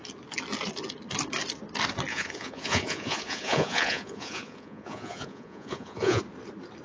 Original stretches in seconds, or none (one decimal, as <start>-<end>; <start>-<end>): 0.0-2.1; 6.2-6.8